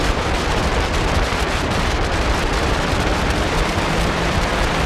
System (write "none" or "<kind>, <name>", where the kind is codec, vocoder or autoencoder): vocoder, BigVGAN v2